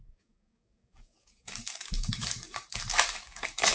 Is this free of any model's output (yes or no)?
no